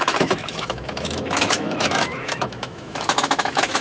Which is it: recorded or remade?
remade